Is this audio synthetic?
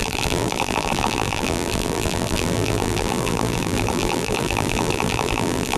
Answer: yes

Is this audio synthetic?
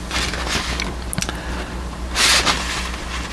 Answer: no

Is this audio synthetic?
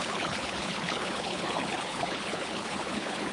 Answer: yes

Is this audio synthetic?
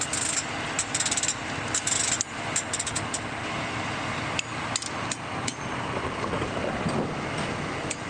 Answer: no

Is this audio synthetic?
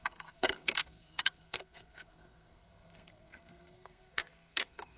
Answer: yes